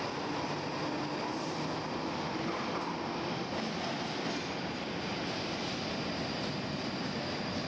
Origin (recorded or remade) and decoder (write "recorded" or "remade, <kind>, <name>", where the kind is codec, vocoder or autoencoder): recorded